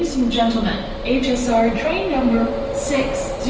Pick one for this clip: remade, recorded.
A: recorded